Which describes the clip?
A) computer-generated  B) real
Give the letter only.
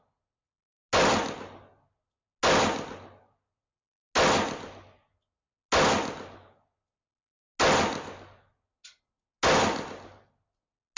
B